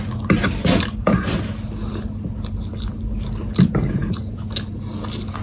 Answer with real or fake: real